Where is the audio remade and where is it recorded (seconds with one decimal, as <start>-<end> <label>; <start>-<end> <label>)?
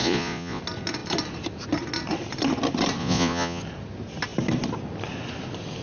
0.0-0.6 remade; 0.6-3.0 recorded; 3.0-3.6 remade; 3.6-5.8 recorded